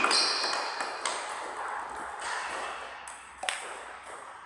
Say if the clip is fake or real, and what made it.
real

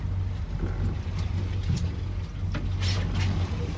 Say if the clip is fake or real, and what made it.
real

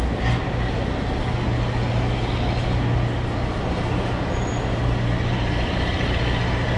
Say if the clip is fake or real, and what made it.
real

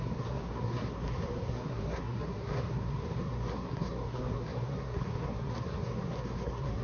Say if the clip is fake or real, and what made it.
fake, codec, SNAC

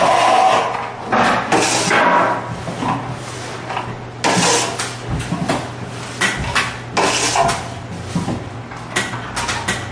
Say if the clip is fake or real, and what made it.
real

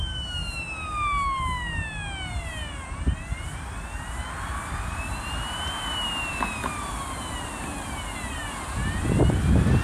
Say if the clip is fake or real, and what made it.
real